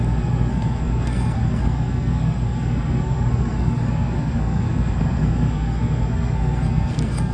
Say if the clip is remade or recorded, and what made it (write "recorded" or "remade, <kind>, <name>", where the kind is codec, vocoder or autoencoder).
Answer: remade, codec, SNAC